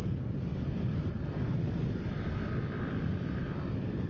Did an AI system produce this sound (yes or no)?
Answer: no